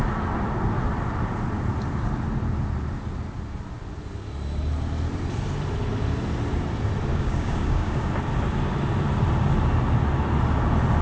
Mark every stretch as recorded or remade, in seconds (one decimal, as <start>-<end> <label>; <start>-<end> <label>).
0.0-7.1 recorded; 7.1-8.1 remade; 8.1-11.0 recorded

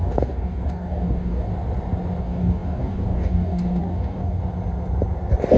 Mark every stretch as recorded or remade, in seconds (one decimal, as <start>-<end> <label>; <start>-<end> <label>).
0.0-1.5 remade; 1.5-2.2 recorded; 2.2-4.4 remade; 4.4-5.6 recorded

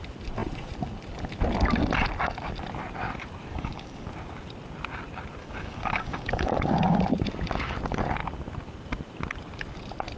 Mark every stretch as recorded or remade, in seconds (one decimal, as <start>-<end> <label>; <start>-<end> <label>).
0.0-3.5 recorded; 3.5-4.1 remade; 4.1-5.4 recorded; 5.4-7.0 remade; 7.0-10.2 recorded

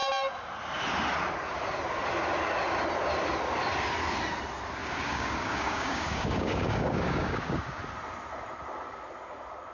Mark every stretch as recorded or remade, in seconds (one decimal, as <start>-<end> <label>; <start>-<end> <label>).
0.0-4.8 recorded; 4.8-7.8 remade; 7.8-9.7 recorded

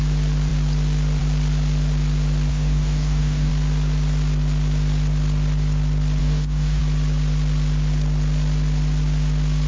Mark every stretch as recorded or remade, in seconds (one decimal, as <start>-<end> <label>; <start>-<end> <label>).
0.0-2.5 recorded; 2.5-3.5 remade; 3.5-6.2 recorded; 6.2-6.8 remade; 6.8-9.7 recorded

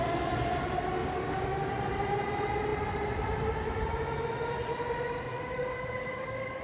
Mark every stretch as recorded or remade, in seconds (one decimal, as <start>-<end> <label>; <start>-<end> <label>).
0.0-1.0 recorded; 1.0-1.7 remade; 1.7-5.3 recorded; 5.3-6.6 remade